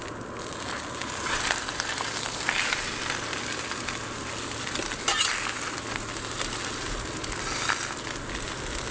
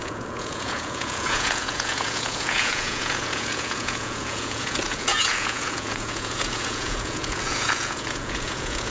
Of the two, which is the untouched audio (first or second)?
first